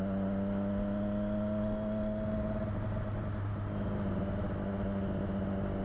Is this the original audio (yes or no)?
yes